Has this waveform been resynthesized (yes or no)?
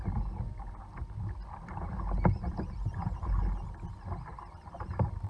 no